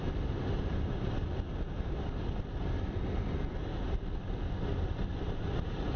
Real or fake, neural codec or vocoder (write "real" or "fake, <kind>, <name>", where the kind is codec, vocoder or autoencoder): real